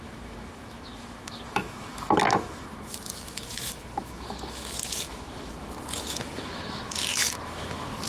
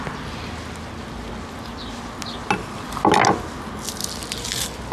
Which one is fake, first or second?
first